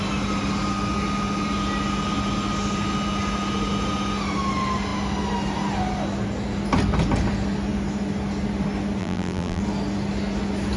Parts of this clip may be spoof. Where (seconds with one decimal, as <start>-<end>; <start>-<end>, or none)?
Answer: 9.0-9.6